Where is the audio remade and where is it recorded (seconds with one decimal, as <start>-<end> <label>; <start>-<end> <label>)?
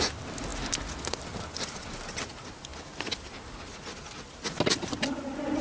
0.0-5.6 recorded